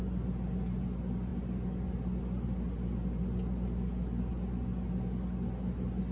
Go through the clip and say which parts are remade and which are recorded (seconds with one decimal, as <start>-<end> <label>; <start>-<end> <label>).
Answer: 0.0-6.1 recorded